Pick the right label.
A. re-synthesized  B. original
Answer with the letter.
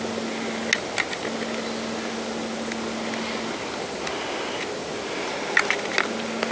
B